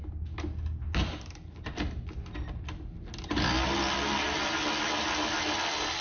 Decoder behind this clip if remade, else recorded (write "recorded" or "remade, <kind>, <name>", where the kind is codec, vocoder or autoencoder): recorded